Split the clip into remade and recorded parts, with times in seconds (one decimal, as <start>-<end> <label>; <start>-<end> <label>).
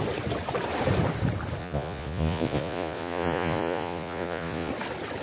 0.0-1.6 recorded; 1.6-4.7 remade; 4.7-5.2 recorded